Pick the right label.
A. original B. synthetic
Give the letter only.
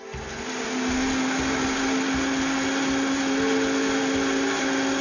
A